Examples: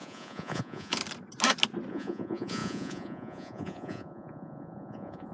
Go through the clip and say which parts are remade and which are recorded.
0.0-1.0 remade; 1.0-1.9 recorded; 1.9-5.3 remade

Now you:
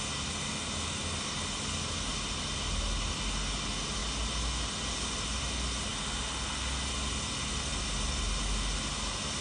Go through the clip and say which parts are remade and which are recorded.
0.0-9.4 recorded

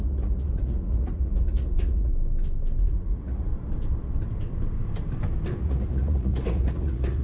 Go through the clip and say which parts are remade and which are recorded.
0.0-2.1 remade; 2.1-2.8 recorded; 2.8-3.5 remade; 3.5-5.6 recorded; 5.6-7.2 remade

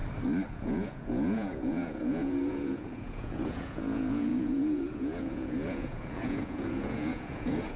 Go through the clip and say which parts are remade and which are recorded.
0.0-0.5 recorded; 0.5-7.8 remade

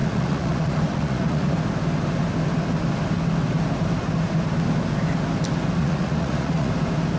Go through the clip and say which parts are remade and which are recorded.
0.0-1.5 remade; 1.5-5.8 recorded; 5.8-6.7 remade; 6.7-7.2 recorded

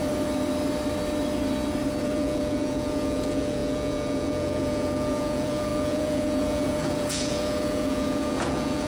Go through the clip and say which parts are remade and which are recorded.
0.0-2.0 recorded; 2.0-8.9 remade